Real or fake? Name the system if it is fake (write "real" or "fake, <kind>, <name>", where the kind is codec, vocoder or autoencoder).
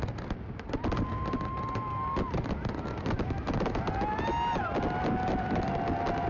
real